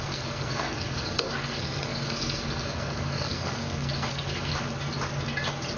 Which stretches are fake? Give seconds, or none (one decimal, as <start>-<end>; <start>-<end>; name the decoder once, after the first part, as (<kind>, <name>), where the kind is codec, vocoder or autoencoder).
0.0-4.5 (codec, SNAC)